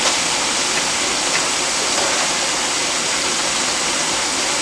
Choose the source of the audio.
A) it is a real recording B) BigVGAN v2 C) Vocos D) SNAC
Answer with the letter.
A